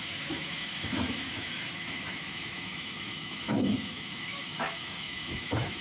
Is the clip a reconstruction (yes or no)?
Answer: yes